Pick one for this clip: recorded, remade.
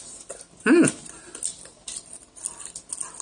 recorded